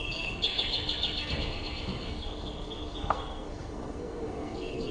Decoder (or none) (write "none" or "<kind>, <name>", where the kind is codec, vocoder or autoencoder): codec, SNAC